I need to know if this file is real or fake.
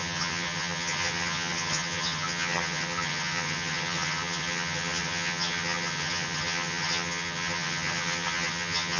fake